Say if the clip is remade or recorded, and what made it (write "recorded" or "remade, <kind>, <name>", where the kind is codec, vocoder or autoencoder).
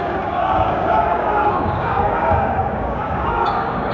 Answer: remade, codec, DAC